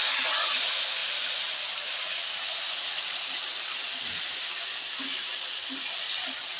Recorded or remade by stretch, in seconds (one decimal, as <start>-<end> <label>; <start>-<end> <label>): 0.0-6.6 recorded